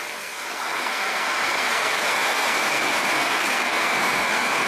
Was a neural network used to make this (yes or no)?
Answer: yes